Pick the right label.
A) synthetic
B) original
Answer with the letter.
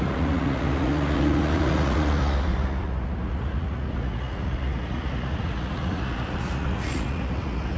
A